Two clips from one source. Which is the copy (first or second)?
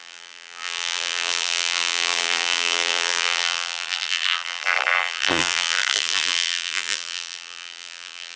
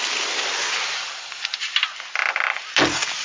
first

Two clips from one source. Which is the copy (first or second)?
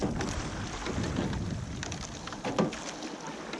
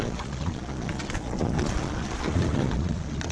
second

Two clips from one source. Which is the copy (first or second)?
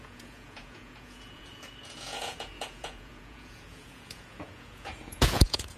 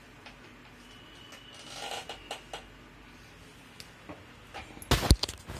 first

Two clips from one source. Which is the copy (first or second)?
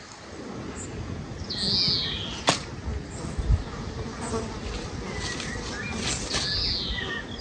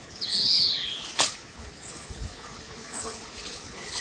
second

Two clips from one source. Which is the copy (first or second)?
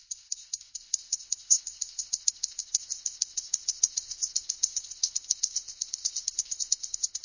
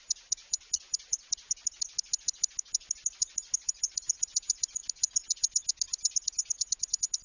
first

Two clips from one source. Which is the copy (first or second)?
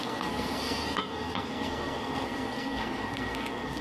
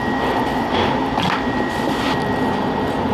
first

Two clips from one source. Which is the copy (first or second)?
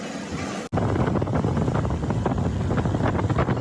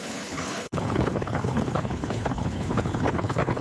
second